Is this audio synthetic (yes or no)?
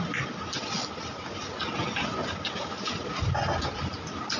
no